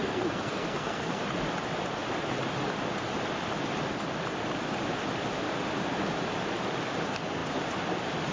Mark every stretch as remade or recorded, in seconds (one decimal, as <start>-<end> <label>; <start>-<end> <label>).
0.0-1.2 remade; 1.2-8.3 recorded